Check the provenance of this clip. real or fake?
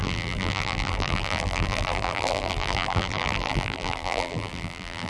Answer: fake